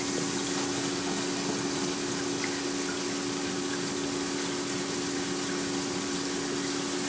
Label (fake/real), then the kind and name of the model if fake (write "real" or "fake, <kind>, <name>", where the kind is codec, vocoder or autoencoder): real